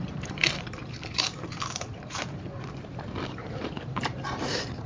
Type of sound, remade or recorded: remade